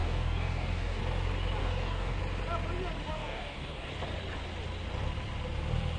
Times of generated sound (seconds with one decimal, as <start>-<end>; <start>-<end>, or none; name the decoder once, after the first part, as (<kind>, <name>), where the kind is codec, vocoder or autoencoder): 0.0-1.0 (codec, DAC); 1.6-2.2; 3.1-3.9